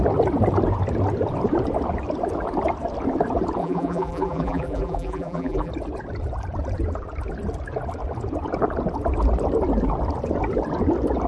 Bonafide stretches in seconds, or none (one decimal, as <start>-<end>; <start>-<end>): 0.0-3.6; 5.7-11.3